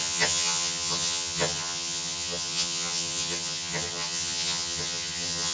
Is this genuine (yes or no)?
no